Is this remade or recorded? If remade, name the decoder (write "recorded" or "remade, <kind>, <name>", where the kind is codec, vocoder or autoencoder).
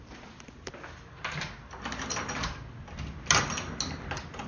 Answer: recorded